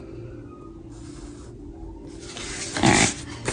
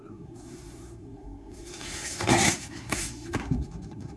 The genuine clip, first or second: first